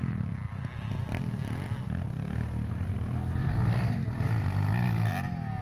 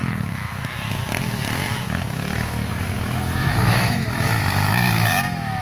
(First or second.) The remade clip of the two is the second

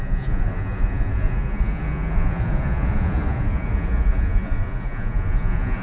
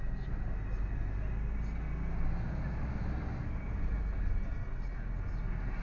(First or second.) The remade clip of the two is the first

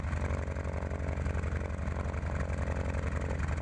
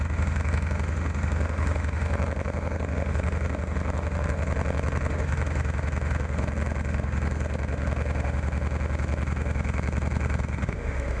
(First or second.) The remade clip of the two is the second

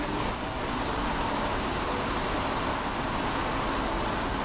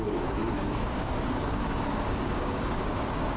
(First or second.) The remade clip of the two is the second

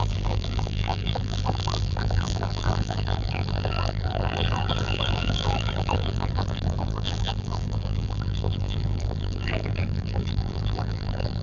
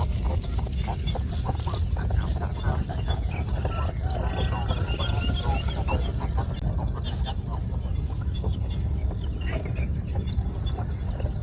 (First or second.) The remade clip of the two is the first